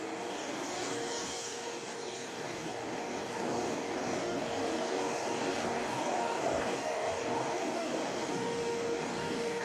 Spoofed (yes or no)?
yes